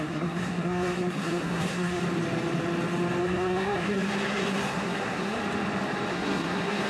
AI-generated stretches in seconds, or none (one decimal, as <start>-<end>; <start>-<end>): 0.0-2.0; 3.2-5.4; 6.1-6.9